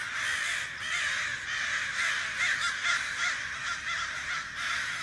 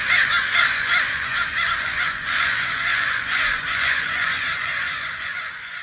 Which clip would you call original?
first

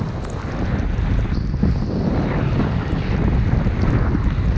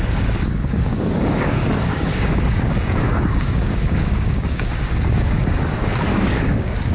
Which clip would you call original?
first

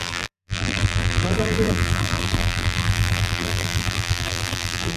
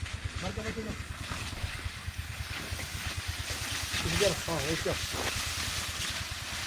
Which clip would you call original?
second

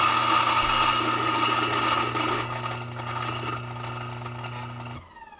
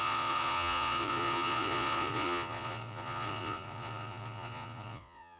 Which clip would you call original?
first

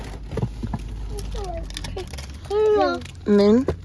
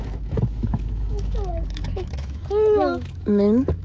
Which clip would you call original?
first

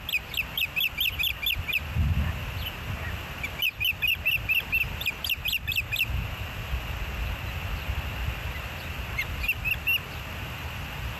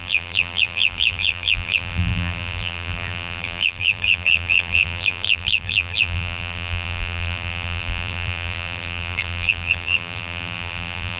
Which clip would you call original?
first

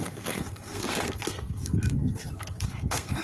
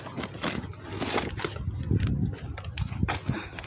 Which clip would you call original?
second